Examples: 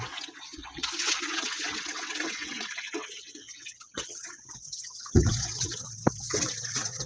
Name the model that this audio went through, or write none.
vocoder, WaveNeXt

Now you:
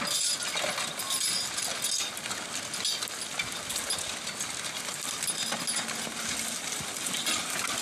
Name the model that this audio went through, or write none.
none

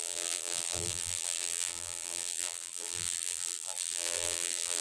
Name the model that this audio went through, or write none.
vocoder, BigVGAN v2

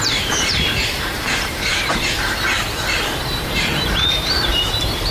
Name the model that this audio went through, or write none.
vocoder, BigVGAN v2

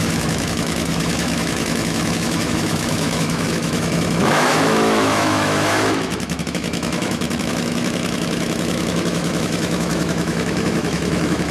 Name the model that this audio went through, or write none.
autoencoder, DAC-VAE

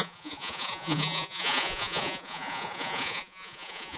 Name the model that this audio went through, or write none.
vocoder, Vocos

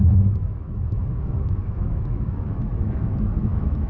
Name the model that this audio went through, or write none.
autoencoder, DAC-VAE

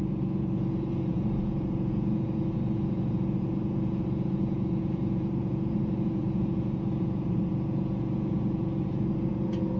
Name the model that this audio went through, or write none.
vocoder, Vocos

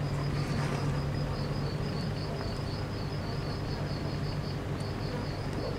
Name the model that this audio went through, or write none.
none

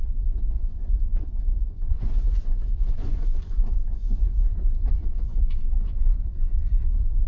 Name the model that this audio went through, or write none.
vocoder, Vocos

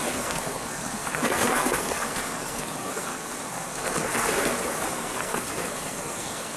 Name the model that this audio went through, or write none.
codec, SNAC